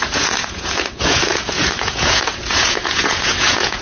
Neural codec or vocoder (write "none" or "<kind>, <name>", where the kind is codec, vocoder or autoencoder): vocoder, Vocos